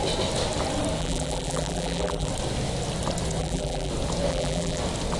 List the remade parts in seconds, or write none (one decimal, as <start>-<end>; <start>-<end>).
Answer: 1.0-2.3; 3.4-3.9; 4.3-4.8